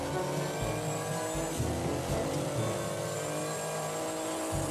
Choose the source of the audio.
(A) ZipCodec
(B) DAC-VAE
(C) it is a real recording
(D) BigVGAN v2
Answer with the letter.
C